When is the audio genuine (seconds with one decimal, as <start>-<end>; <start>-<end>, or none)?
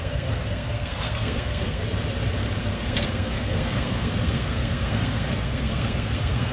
1.8-2.6